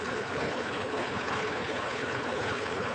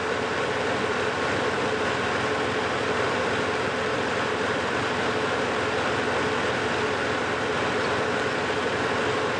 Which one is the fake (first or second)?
first